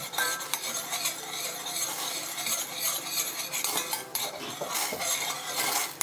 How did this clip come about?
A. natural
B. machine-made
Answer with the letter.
B